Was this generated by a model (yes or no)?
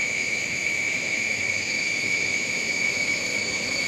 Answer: yes